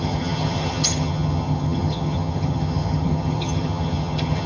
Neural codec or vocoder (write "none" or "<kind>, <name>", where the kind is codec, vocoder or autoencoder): vocoder, HiFi-GAN